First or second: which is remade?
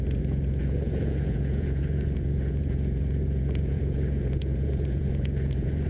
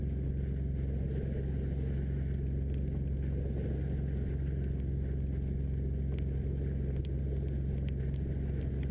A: first